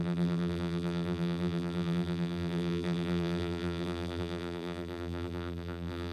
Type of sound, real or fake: fake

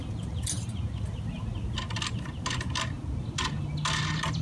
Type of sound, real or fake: real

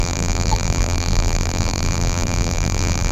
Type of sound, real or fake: fake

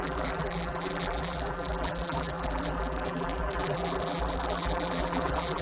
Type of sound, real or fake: fake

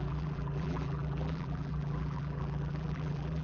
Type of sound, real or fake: fake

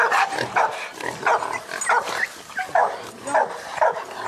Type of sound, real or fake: real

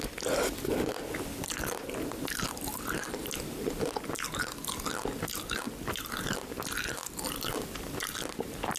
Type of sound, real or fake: real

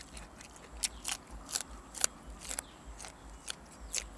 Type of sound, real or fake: real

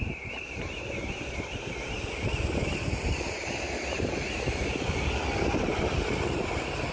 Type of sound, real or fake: real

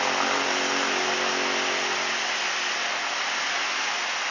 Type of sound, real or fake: real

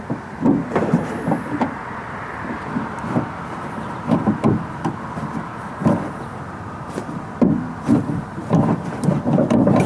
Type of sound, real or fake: fake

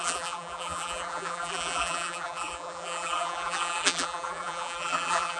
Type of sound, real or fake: fake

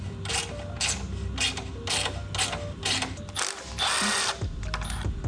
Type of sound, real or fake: real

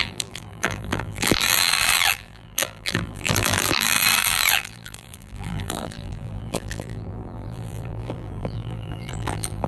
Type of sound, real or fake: fake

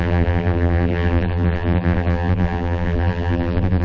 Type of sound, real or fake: fake